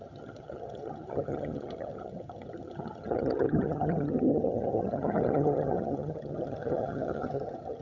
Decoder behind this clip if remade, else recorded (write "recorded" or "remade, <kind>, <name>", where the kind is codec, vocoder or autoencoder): remade, vocoder, HiFi-GAN